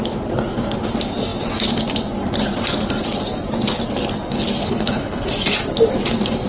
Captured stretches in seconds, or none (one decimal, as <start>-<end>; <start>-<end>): 0.0-4.6; 5.3-6.5